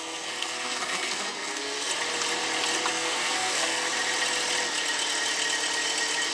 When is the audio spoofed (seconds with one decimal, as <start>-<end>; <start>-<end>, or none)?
0.0-1.9; 2.9-3.9